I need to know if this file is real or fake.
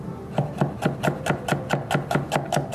real